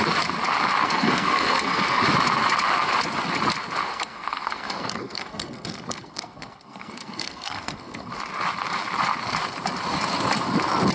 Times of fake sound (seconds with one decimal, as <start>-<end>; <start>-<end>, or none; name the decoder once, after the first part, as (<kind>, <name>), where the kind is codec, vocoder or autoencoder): 0.8-2.0 (codec, SNAC); 3.8-8.1